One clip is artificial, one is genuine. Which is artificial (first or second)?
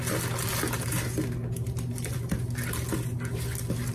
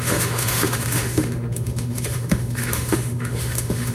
second